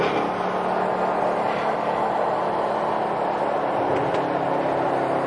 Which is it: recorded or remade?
recorded